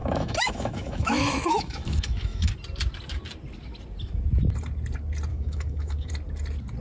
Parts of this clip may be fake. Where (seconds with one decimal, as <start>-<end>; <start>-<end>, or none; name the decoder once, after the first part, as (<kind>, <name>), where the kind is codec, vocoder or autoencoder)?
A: 0.0-2.5 (autoencoder, DAC-VAE); 5.3-6.1